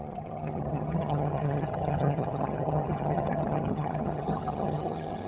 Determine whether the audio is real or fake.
fake